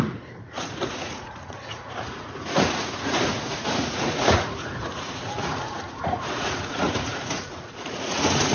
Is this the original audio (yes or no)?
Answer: no